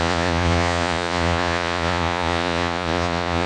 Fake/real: fake